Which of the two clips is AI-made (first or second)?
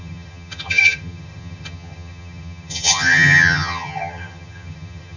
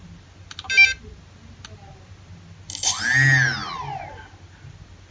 first